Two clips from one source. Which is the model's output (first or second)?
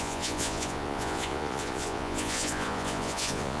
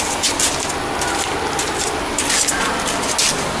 first